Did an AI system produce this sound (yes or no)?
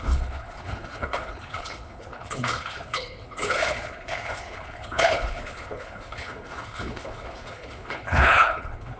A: yes